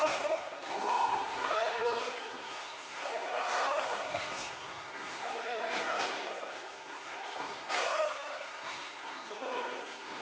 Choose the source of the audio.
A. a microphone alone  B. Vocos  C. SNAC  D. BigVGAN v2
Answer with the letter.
C